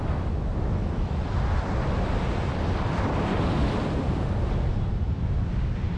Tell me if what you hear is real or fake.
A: real